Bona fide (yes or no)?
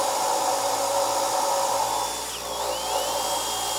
yes